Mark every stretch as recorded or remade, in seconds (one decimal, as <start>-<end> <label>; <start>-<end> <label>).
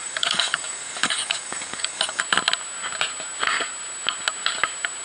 0.0-2.2 remade; 2.2-5.0 recorded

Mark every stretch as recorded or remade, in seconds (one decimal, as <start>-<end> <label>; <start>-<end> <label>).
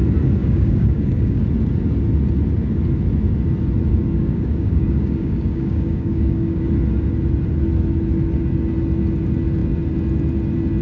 0.0-0.4 recorded; 0.4-1.4 remade; 1.4-3.9 recorded; 3.9-6.6 remade; 6.6-10.8 recorded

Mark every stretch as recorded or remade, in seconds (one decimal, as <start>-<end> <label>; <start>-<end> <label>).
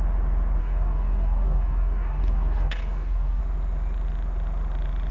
0.0-0.6 recorded; 0.6-3.4 remade; 3.4-5.1 recorded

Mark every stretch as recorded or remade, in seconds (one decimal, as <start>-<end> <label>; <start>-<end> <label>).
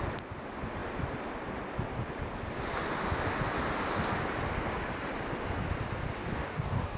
0.0-6.2 recorded; 6.2-7.0 remade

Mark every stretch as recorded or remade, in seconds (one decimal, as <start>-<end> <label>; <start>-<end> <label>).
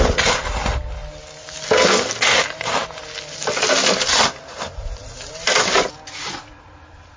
0.0-7.2 recorded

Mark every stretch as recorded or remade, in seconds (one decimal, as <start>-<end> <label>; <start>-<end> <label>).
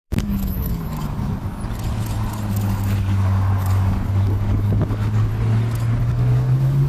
0.0-1.6 remade; 1.6-2.5 recorded; 2.5-5.3 remade; 5.3-6.0 recorded; 6.0-6.9 remade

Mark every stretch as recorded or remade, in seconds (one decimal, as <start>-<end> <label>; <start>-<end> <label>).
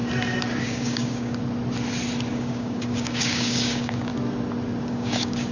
0.0-0.6 recorded; 0.6-1.4 remade; 1.4-2.3 recorded; 2.3-4.1 remade; 4.1-4.8 recorded; 4.8-5.5 remade